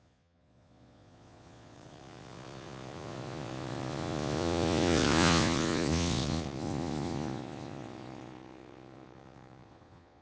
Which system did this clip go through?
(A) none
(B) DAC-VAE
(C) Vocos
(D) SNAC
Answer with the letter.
C